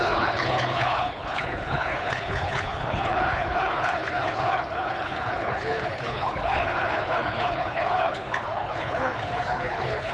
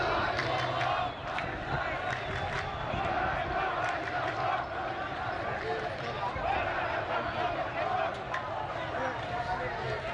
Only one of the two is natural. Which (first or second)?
second